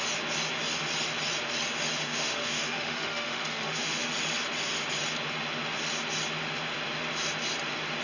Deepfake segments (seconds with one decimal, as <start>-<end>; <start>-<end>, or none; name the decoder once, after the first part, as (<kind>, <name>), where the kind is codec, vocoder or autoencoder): 2.0-4.1 (autoencoder, DAC-VAE)